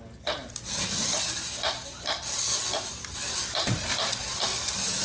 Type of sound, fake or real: real